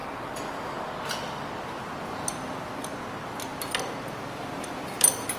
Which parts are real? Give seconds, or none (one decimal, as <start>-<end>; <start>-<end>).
0.0-5.4